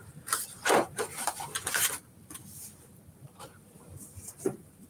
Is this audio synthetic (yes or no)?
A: yes